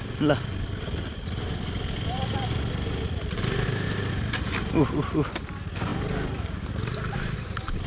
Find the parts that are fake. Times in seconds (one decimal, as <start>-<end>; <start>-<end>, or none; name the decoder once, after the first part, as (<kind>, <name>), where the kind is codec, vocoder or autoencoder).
none